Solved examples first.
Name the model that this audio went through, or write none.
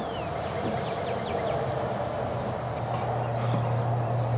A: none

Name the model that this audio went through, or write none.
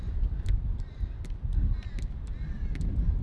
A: none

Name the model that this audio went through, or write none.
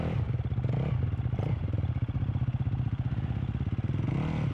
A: none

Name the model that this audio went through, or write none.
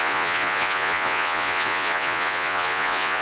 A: vocoder, Vocos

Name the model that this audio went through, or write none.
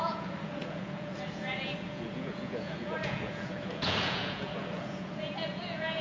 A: vocoder, Vocos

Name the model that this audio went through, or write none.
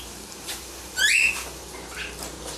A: none